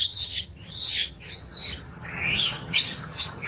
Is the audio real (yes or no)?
no